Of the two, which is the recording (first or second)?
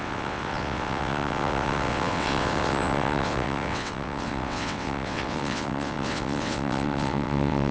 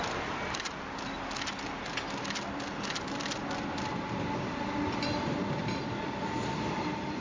second